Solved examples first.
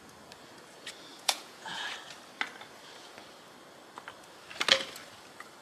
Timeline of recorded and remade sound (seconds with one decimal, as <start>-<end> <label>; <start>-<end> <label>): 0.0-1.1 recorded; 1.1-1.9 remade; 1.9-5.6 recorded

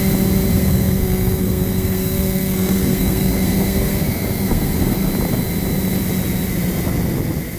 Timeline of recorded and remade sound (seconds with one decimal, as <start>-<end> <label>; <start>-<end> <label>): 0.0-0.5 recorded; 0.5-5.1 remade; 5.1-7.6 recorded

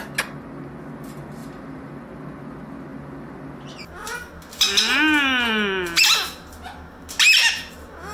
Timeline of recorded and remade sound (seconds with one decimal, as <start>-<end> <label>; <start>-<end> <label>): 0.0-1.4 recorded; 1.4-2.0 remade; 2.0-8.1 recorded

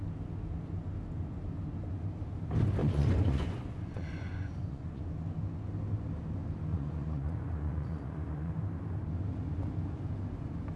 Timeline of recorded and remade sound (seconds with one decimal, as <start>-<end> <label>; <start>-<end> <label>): 0.0-2.8 recorded; 2.8-5.1 remade; 5.1-6.7 recorded; 6.7-8.5 remade; 8.5-10.8 recorded

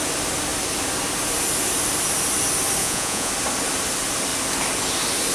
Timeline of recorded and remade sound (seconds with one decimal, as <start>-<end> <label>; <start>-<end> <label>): 0.0-2.8 recorded; 2.8-3.3 remade; 3.3-5.3 recorded

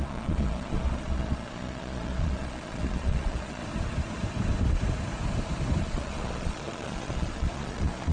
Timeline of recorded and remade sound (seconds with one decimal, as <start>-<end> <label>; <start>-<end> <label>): 0.0-3.6 remade; 3.6-5.8 recorded; 5.8-8.1 remade

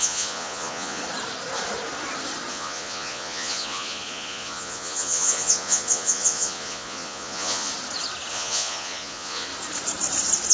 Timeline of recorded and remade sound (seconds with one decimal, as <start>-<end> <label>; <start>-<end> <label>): 0.0-1.0 remade; 1.0-2.5 recorded; 2.5-7.7 remade; 7.7-8.3 recorded; 8.3-9.5 remade; 9.5-10.5 recorded